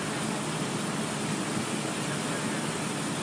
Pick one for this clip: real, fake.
real